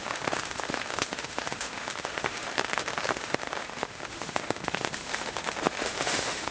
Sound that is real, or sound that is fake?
fake